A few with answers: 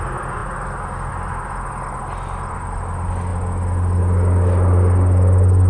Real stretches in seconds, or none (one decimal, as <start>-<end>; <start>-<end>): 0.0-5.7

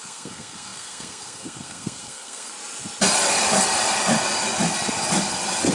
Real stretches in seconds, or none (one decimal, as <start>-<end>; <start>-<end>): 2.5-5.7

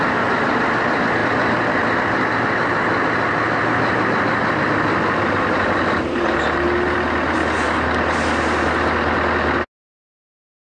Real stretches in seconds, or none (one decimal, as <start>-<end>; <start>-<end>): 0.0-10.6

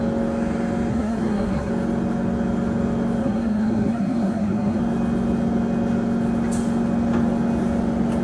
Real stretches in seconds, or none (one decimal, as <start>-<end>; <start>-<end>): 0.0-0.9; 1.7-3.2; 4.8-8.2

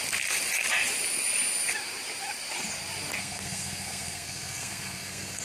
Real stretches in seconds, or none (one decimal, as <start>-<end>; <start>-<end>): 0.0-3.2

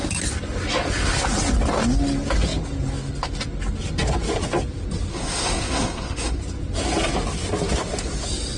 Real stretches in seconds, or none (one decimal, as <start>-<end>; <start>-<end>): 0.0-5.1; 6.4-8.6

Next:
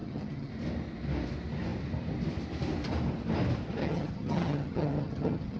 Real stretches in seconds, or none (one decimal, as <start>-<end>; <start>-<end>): 0.5-3.8

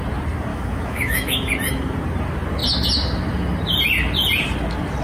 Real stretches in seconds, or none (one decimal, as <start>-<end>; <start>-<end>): 0.0-0.5; 1.5-5.0